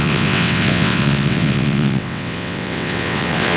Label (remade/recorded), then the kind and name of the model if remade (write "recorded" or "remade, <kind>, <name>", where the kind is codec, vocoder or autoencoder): remade, vocoder, WaveNeXt